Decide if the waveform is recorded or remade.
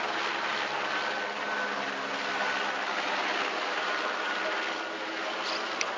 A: recorded